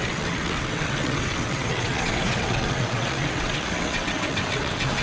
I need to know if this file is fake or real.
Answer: fake